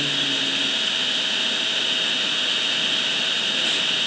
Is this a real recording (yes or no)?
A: yes